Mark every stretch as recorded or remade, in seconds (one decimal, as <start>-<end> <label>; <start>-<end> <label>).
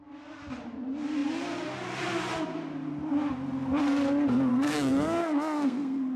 0.0-4.5 recorded; 4.5-6.2 remade